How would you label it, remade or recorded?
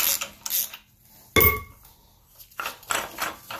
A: recorded